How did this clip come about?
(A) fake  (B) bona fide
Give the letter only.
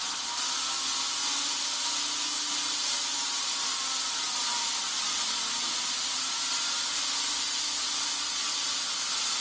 B